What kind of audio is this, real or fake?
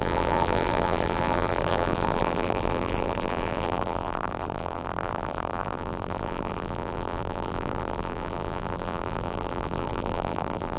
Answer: fake